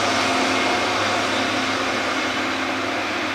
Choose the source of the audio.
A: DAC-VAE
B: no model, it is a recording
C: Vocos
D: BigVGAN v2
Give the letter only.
B